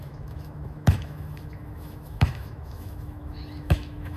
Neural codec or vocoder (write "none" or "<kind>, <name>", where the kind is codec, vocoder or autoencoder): autoencoder, DAC-VAE